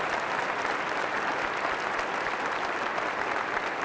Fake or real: real